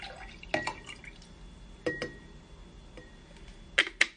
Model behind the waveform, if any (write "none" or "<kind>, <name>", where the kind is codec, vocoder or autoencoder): none